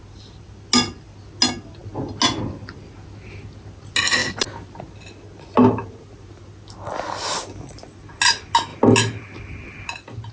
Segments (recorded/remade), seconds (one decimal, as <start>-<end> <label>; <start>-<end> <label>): 0.0-10.3 recorded